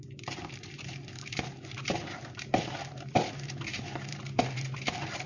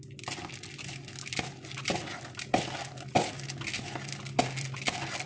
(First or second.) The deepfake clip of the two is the first